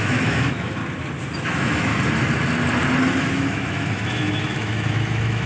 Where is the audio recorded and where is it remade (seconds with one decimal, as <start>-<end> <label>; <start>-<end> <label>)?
0.0-0.8 remade; 0.8-1.4 recorded; 1.4-1.9 remade; 1.9-3.3 recorded; 3.3-5.5 remade